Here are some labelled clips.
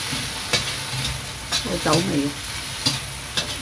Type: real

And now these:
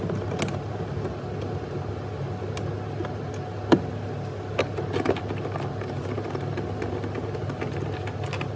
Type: real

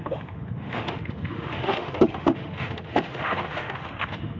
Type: fake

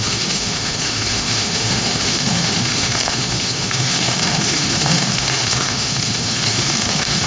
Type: fake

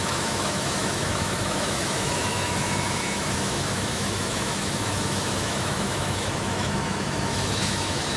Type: fake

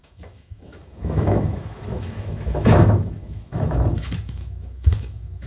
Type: fake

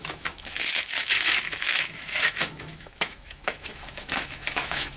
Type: fake